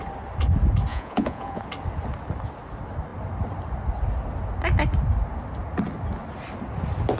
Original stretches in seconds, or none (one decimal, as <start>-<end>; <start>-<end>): 0.0-0.9; 1.6-7.2

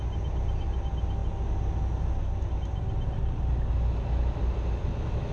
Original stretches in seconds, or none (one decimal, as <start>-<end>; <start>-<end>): 0.0-5.3